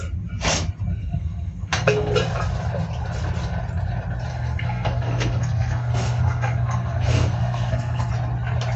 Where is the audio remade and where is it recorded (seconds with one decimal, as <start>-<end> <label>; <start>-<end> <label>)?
0.0-1.0 recorded; 1.0-2.1 remade; 2.1-4.3 recorded; 4.3-8.1 remade; 8.1-8.8 recorded